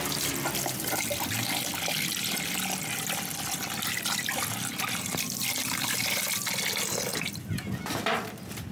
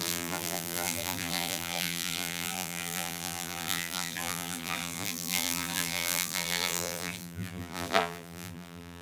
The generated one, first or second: second